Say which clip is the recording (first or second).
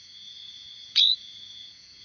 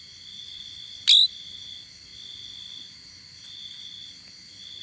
second